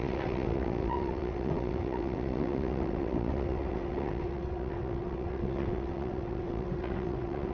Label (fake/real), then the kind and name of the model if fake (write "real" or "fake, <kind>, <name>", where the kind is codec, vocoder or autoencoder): fake, vocoder, WaveNeXt